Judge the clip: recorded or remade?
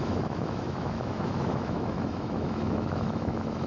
remade